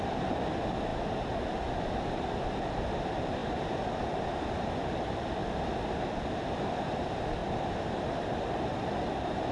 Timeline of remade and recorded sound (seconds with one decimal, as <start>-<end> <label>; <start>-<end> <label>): 0.0-9.5 recorded